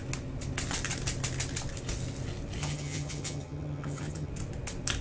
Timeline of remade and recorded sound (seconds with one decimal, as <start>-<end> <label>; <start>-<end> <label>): 0.0-2.6 recorded; 2.6-4.3 remade; 4.3-5.0 recorded